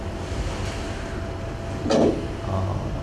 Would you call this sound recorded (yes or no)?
yes